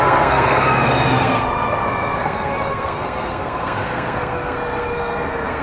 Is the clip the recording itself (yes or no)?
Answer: no